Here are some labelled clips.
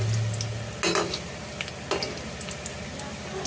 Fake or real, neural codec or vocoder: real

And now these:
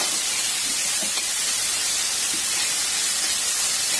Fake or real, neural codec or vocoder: fake, vocoder, BigVGAN v2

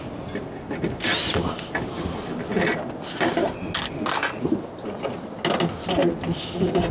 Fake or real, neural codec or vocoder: real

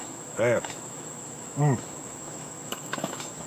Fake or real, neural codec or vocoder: fake, autoencoder, DAC-VAE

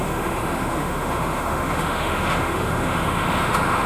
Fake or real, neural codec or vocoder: fake, autoencoder, DAC-VAE